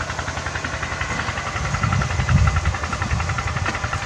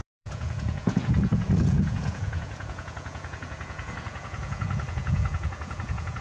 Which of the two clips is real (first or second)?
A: first